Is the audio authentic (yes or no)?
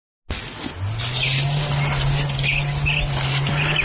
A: yes